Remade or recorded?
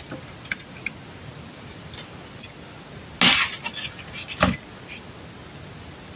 recorded